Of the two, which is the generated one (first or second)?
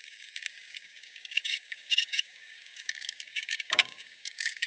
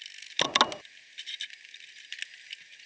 first